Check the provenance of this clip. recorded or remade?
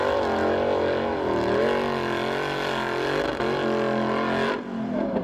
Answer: recorded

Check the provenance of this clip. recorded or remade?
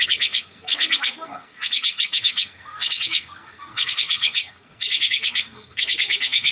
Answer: remade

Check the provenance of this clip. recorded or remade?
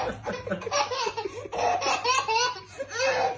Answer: recorded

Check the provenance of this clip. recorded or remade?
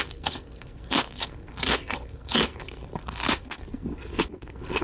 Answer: remade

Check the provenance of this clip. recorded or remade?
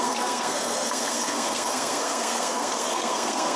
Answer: remade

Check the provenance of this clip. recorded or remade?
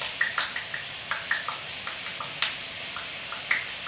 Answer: recorded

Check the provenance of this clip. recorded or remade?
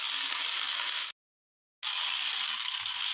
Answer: recorded